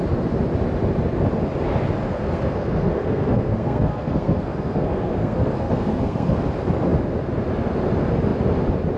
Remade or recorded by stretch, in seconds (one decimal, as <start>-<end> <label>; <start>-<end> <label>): 0.0-2.1 recorded; 2.1-6.4 remade; 6.4-9.0 recorded